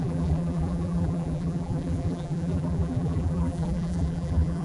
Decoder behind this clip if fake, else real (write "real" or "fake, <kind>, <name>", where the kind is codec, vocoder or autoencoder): fake, vocoder, BigVGAN v2